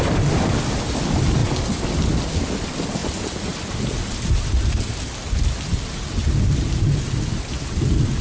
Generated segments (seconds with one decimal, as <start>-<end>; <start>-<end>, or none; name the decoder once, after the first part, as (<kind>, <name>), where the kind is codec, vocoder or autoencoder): none